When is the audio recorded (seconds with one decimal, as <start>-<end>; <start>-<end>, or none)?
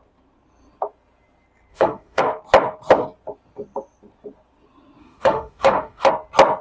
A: 0.0-1.7; 2.2-5.0; 6.1-6.6